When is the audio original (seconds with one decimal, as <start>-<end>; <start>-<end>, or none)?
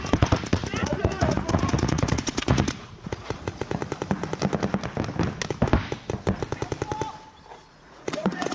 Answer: 3.8-7.5